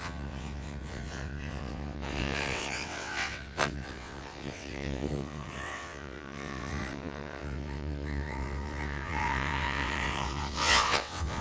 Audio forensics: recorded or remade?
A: remade